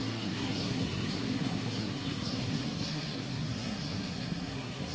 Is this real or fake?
fake